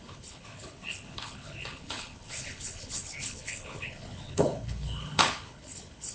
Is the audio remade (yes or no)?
yes